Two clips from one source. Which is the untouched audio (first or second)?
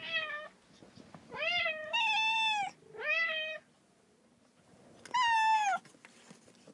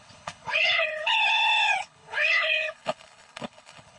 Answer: first